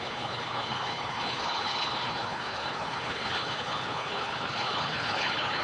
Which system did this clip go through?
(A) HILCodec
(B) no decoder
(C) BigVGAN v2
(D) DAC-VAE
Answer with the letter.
A